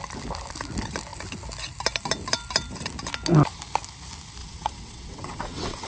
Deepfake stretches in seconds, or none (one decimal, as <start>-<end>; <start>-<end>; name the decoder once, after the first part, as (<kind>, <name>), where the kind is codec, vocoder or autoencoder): 4.4-5.9 (vocoder, WaveNeXt)